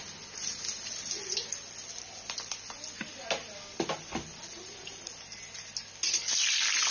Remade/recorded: recorded